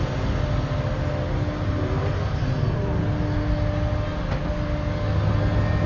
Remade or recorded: recorded